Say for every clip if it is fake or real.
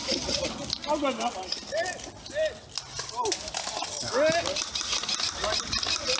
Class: real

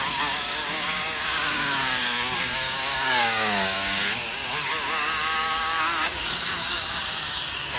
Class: fake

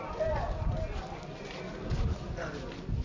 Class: real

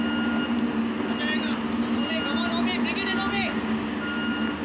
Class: real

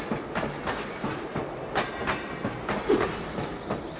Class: real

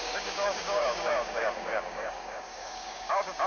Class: fake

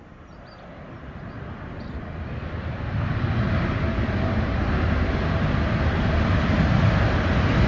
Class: real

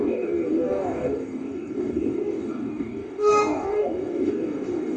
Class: fake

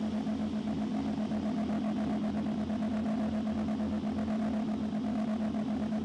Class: real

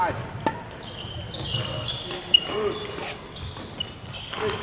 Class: real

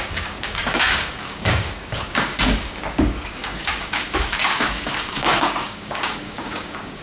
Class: fake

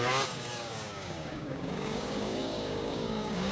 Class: fake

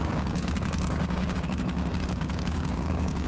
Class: fake